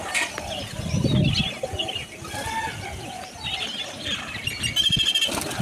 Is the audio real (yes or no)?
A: yes